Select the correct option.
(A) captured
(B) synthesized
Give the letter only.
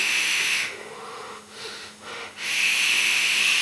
B